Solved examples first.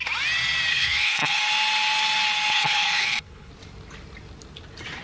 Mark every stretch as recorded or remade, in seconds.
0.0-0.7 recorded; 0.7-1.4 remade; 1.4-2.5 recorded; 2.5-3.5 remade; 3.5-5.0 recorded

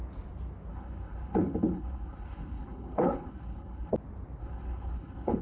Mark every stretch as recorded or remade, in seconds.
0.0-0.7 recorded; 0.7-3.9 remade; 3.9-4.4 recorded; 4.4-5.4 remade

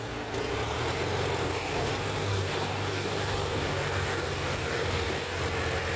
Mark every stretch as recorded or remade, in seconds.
0.0-1.4 recorded; 1.4-1.9 remade; 1.9-2.3 recorded; 2.3-5.4 remade; 5.4-6.0 recorded

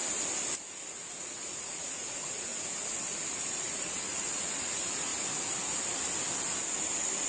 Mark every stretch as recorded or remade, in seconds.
0.0-1.1 recorded; 1.1-2.5 remade; 2.5-3.3 recorded; 3.3-5.1 remade; 5.1-7.3 recorded